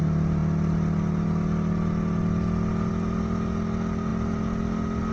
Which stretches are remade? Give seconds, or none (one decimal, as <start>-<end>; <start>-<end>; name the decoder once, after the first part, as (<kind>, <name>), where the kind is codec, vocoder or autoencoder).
none